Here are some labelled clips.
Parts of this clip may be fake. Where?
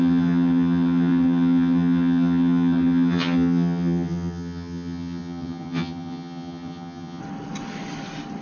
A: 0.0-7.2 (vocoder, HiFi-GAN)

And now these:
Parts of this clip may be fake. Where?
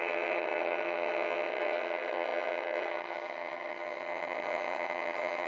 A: 0.0-5.5 (vocoder, HiFi-GAN)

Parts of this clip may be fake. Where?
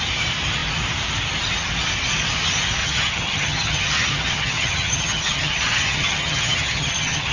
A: 2.8-7.3 (vocoder, HiFi-GAN)